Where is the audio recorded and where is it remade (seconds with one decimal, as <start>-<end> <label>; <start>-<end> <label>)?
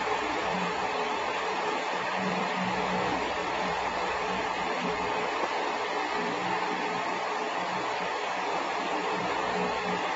0.0-0.5 recorded; 0.5-2.4 remade; 2.4-3.4 recorded; 3.4-4.9 remade; 4.9-8.0 recorded; 8.0-9.2 remade; 9.2-10.2 recorded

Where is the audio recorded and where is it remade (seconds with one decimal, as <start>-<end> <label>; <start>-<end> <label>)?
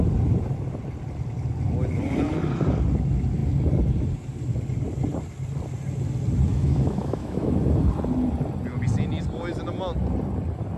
0.0-6.5 recorded; 6.5-7.6 remade; 7.6-10.8 recorded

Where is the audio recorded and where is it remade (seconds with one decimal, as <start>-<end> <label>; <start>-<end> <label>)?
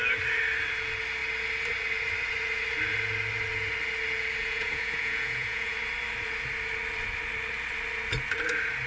0.0-4.4 recorded; 4.4-5.7 remade; 5.7-8.9 recorded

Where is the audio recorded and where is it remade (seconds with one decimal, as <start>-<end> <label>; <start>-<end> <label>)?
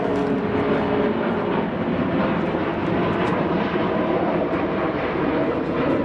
0.0-3.3 recorded; 3.3-5.1 remade; 5.1-6.0 recorded